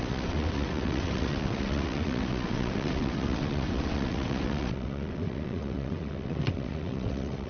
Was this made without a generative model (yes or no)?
no